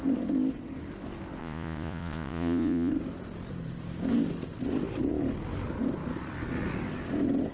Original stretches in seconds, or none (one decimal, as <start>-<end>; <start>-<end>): 0.0-1.4; 2.9-7.5